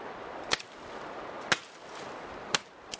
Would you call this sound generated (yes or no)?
no